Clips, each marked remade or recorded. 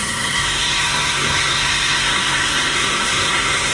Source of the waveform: remade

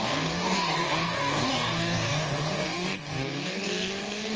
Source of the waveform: remade